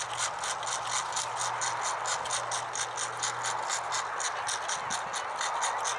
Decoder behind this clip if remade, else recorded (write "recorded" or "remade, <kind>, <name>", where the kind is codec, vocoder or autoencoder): recorded